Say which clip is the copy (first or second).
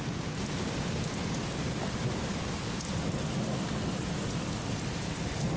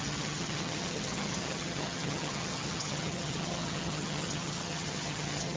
second